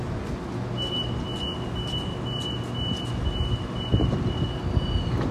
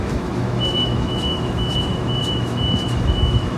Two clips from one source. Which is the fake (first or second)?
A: second